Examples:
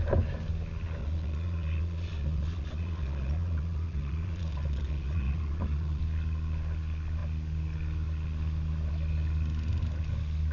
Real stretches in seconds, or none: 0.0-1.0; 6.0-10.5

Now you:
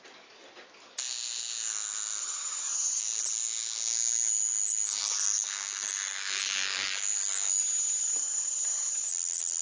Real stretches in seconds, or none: 0.0-2.2; 3.0-7.6; 9.1-9.6

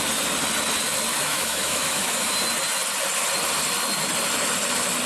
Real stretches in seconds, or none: 0.0-1.1; 2.3-5.1